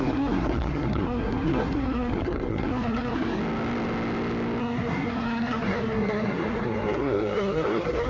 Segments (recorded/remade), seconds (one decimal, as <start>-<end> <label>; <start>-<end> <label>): 0.0-3.4 remade; 3.4-4.6 recorded; 4.6-8.1 remade